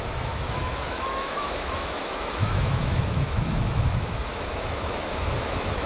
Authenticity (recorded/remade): remade